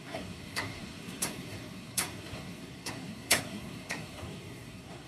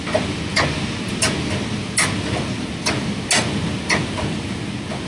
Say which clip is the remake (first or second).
first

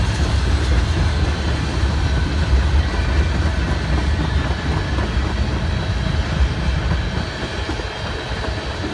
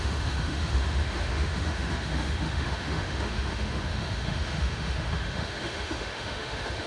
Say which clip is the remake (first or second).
second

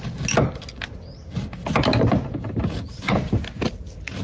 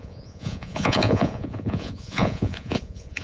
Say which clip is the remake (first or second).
second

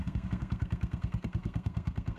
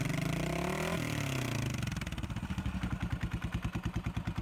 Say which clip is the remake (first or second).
first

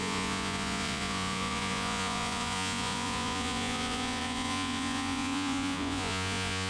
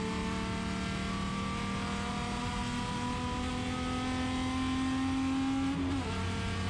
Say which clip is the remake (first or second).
first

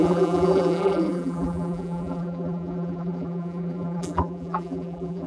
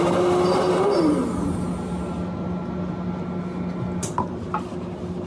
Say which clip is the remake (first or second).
first